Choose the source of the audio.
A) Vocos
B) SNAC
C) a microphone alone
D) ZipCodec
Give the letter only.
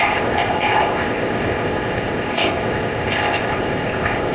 D